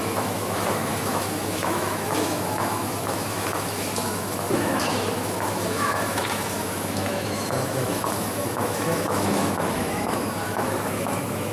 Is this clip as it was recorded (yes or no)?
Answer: no